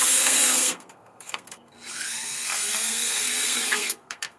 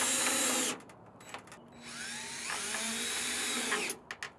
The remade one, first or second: first